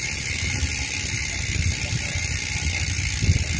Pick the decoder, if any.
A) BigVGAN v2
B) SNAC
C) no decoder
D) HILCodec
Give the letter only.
C